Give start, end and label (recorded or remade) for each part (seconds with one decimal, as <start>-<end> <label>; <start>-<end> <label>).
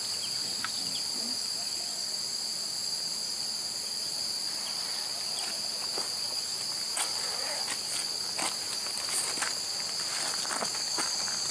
0.0-11.5 recorded